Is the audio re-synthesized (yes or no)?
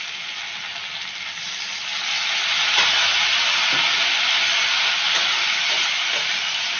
no